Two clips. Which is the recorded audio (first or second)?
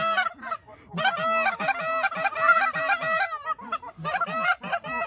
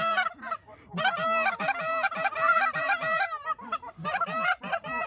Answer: first